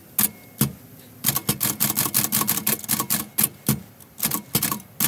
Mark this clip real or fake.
real